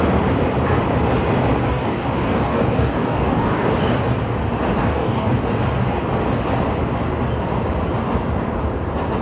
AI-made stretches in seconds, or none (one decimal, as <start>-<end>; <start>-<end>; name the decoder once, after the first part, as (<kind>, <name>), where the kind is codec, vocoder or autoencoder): 1.6-3.7 (codec, DAC); 4.8-5.3